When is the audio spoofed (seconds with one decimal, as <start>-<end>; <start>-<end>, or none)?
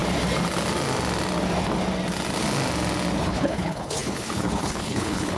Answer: 3.2-5.4